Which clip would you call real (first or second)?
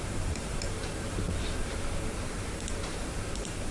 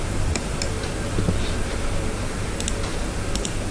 second